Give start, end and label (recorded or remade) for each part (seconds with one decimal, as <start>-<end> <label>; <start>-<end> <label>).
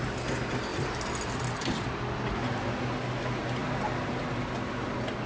0.0-0.7 recorded; 0.7-2.7 remade; 2.7-3.6 recorded; 3.6-4.5 remade; 4.5-5.3 recorded